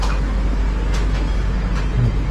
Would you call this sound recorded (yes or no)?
yes